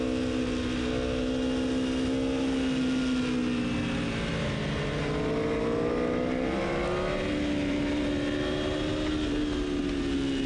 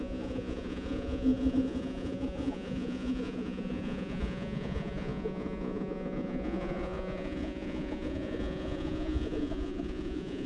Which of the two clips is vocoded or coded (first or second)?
second